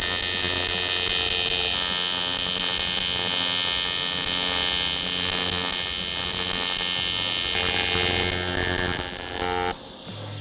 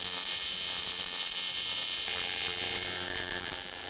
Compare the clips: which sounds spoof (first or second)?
second